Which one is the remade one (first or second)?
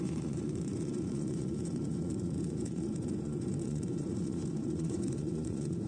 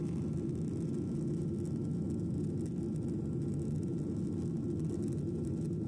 first